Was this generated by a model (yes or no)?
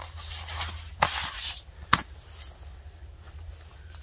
no